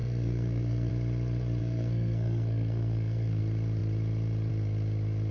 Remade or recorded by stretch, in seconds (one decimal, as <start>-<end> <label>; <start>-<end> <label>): 0.0-0.9 remade; 0.9-1.6 recorded; 1.6-3.4 remade; 3.4-5.3 recorded